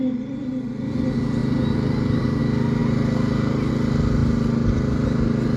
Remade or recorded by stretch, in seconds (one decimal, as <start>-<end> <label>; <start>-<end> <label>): 0.0-5.6 recorded